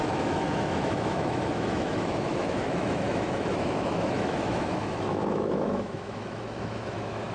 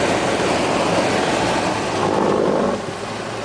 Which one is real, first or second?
second